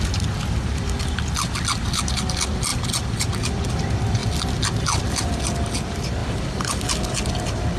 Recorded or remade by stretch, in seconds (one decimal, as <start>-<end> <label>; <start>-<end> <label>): 0.0-6.2 recorded; 6.2-6.8 remade; 6.8-7.8 recorded